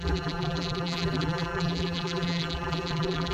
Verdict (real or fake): fake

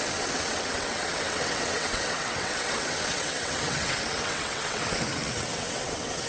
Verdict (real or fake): fake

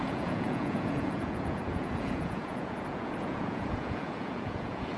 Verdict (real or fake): fake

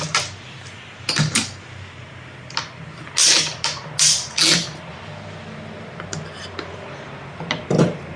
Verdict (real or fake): real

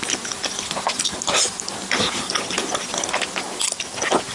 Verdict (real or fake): real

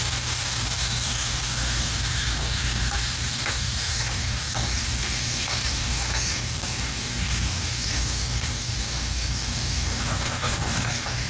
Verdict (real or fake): fake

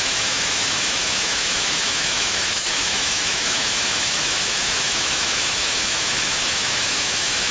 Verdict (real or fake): fake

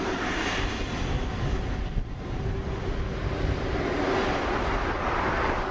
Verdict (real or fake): real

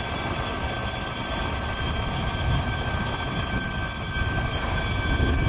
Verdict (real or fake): real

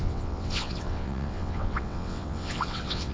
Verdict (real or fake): fake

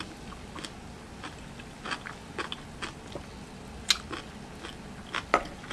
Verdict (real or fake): real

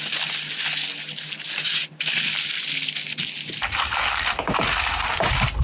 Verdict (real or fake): real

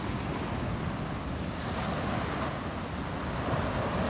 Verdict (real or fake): real